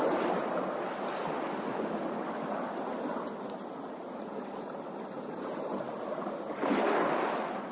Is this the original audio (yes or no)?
yes